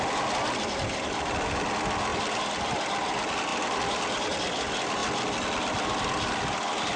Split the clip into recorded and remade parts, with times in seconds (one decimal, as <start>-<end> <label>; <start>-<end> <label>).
0.0-7.0 recorded